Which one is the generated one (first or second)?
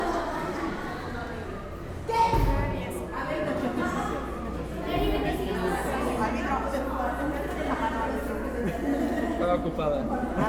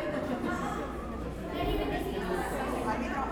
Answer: second